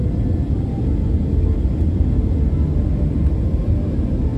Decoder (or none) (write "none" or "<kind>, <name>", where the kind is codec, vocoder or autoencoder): none